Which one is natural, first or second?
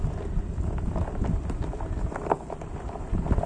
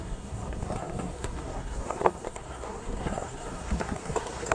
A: first